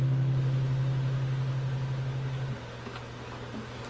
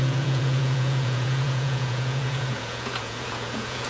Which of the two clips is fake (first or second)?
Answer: second